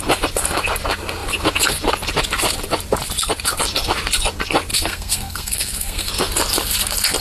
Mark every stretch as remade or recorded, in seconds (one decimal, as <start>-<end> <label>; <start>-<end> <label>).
0.0-4.7 recorded; 4.7-6.1 remade; 6.1-7.2 recorded